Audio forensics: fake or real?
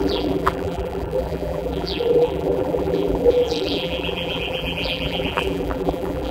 fake